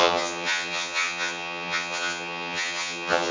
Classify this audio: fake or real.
fake